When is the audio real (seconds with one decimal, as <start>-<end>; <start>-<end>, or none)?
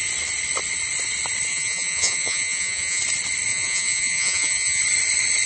0.0-1.5; 3.0-3.5; 4.8-5.5